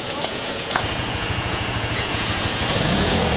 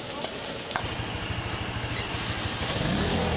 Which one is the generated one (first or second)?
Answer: first